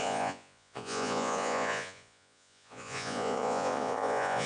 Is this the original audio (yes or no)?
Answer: no